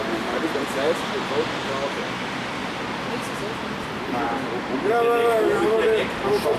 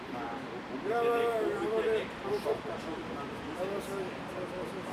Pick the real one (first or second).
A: first